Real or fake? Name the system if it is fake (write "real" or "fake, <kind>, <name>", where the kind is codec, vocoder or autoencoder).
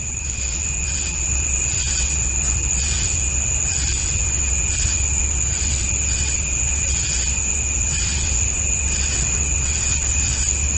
fake, vocoder, WaveNeXt